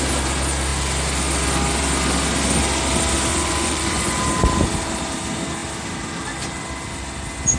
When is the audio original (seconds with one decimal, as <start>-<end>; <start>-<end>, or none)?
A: 0.0-3.3; 4.2-7.6